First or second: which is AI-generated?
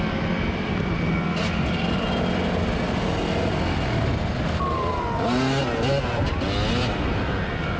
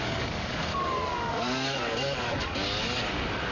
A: second